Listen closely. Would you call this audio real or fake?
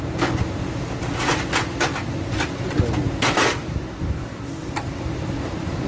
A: real